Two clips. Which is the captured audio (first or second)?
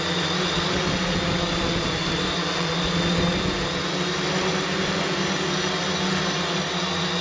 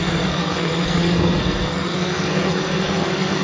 first